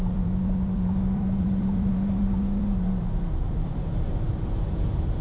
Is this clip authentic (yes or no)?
no